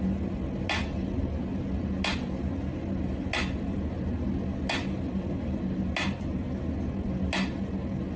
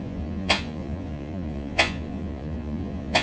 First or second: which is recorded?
first